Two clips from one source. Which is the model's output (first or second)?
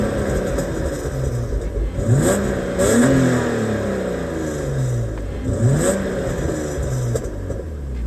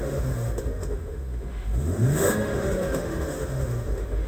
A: second